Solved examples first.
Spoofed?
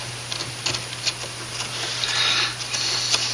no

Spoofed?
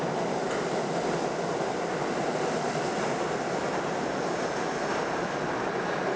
no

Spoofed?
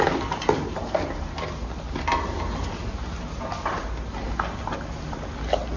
no